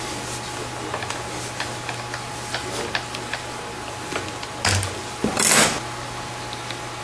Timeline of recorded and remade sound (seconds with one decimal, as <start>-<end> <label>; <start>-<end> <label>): 0.0-7.0 recorded